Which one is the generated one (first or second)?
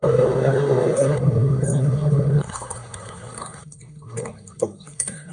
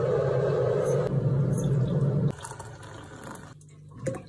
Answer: first